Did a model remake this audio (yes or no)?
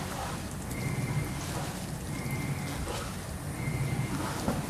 no